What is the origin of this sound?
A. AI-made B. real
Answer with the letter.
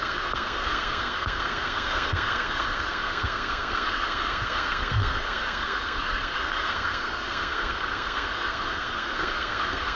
A